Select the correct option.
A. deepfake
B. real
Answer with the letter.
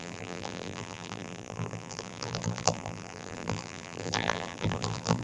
A